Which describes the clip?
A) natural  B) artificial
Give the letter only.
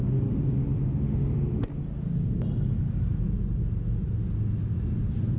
A